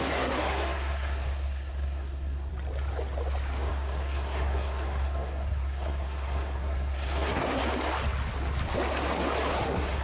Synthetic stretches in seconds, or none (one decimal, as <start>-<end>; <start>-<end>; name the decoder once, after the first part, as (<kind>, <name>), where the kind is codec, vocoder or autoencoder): 0.0-2.5 (codec, SNAC); 3.7-7.6; 9.5-10.0